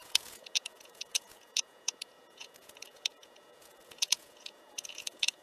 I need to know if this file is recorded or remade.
remade